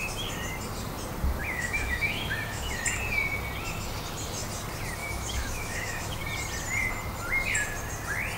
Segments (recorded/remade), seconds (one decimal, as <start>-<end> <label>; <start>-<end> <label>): 0.0-1.4 recorded; 1.4-2.8 remade; 2.8-5.0 recorded; 5.0-6.2 remade; 6.2-8.4 recorded